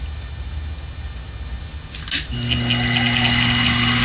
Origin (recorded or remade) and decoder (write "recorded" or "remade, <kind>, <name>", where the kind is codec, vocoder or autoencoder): recorded